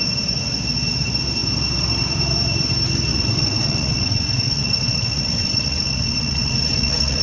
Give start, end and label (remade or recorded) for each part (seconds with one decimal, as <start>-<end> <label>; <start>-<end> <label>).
0.0-3.1 recorded; 3.1-7.2 remade